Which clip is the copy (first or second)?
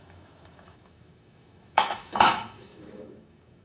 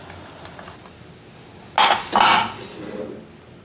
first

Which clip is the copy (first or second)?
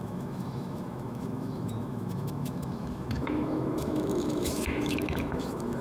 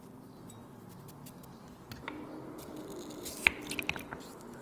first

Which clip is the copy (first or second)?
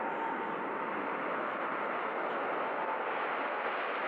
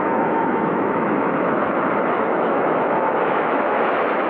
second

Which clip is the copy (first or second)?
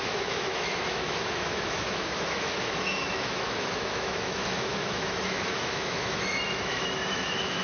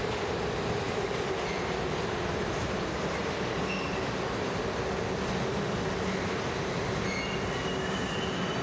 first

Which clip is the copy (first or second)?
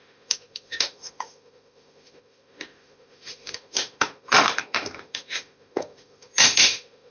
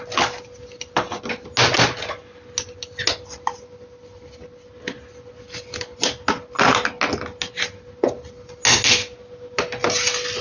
first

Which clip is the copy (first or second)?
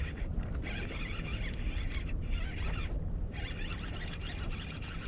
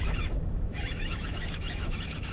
second